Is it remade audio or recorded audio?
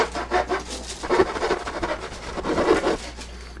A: recorded